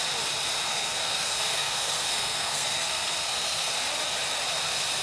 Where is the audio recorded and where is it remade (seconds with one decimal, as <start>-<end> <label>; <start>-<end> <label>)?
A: 0.0-0.7 recorded; 0.7-3.7 remade; 3.7-5.0 recorded